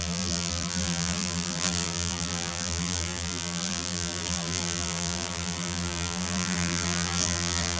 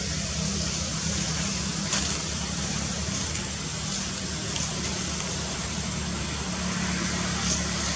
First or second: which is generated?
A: first